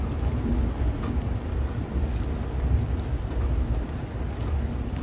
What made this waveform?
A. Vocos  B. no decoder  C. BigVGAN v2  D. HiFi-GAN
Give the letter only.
B